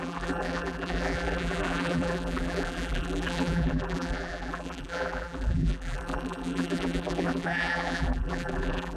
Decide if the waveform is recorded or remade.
remade